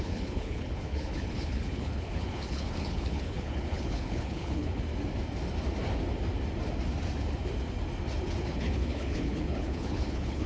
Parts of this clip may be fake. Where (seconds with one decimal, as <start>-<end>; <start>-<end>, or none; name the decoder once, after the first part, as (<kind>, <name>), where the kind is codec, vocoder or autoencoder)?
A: 0.0-4.9 (codec, HILCodec); 8.4-10.5